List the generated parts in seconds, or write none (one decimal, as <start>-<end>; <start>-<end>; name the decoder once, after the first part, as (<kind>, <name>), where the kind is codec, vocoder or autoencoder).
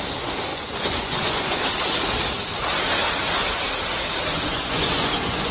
0.5-1.6 (vocoder, Vocos); 4.3-5.5